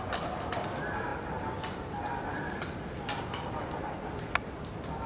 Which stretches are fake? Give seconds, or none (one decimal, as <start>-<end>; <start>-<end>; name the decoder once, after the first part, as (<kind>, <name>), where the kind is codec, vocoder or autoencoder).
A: none